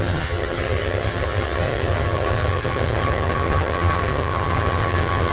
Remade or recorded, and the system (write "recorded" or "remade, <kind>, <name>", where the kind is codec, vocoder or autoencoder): remade, vocoder, HiFi-GAN